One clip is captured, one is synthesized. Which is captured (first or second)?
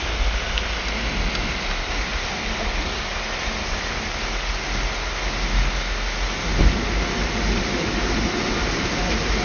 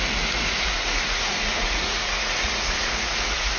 first